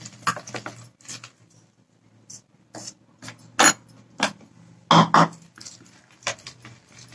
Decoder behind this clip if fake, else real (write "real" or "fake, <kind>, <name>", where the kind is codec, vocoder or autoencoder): real